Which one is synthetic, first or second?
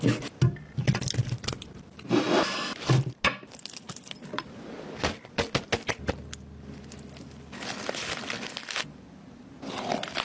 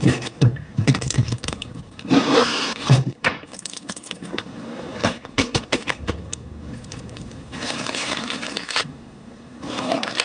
second